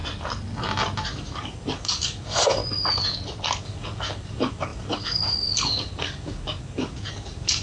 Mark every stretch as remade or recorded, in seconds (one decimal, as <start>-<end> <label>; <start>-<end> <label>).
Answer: 0.0-1.1 recorded; 1.1-2.6 remade; 2.6-3.6 recorded; 3.6-7.6 remade

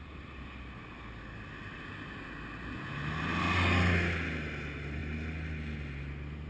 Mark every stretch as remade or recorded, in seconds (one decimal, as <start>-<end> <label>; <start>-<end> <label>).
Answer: 0.0-6.5 recorded

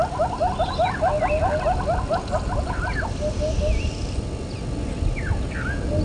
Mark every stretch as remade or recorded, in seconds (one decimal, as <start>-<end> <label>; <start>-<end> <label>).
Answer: 0.0-6.0 recorded

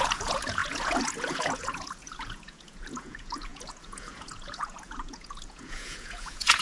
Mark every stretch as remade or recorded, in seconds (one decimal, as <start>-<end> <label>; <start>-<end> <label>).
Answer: 0.0-6.6 remade